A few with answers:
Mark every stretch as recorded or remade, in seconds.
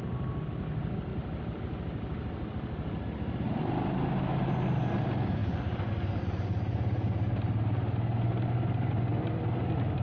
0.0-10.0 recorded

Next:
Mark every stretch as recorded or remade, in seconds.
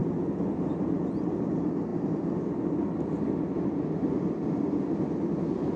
0.0-5.8 recorded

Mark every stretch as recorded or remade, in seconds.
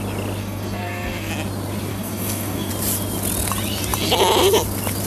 0.0-0.4 recorded; 0.4-1.3 remade; 1.3-1.9 recorded; 1.9-2.7 remade; 2.7-5.1 recorded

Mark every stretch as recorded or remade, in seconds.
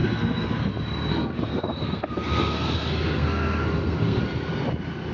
0.0-0.7 remade; 0.7-1.1 recorded; 1.1-4.2 remade; 4.2-5.1 recorded